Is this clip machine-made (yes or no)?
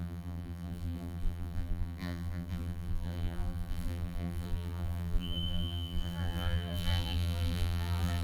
yes